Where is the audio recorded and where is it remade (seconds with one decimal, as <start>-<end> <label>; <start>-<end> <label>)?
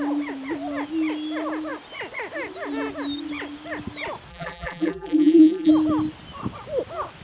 0.0-4.3 recorded; 4.3-5.7 remade; 5.7-7.2 recorded